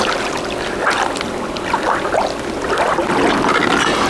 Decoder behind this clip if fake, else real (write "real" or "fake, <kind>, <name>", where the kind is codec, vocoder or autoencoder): real